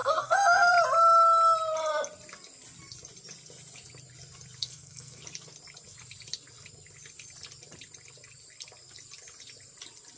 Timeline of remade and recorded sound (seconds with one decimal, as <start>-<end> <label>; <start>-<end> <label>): 0.0-0.7 remade; 0.7-4.6 recorded; 4.6-5.2 remade; 5.2-10.2 recorded